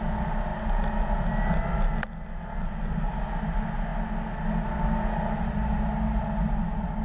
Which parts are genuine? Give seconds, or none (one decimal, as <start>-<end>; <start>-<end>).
0.0-7.0